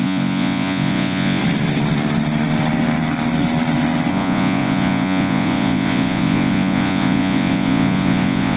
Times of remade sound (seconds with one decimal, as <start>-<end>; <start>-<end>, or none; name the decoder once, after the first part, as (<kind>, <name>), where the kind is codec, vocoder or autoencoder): 0.0-1.4 (vocoder, Vocos); 4.1-8.6